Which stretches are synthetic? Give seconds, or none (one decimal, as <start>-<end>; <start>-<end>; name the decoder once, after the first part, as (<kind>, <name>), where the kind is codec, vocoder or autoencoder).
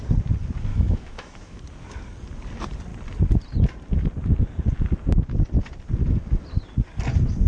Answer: 0.7-1.6 (autoencoder, DAC-VAE)